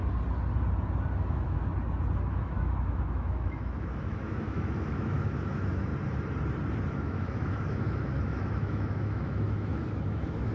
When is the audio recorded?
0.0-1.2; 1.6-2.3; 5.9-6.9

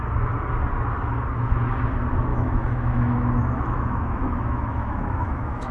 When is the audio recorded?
0.0-2.3

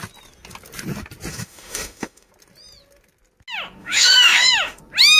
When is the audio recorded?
0.0-1.3; 2.3-3.8; 4.8-5.2

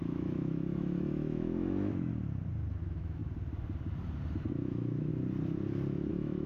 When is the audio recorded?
2.1-2.8; 3.2-4.5; 5.1-6.1

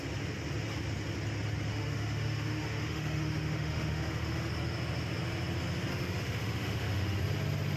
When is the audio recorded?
0.0-1.7; 4.5-5.9; 7.2-7.8

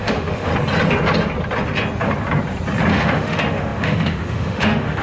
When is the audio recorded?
0.5-2.9